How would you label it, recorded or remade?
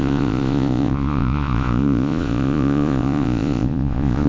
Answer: remade